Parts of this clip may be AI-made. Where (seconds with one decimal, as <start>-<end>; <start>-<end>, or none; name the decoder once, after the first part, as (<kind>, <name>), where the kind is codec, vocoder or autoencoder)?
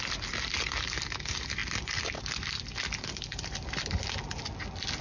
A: none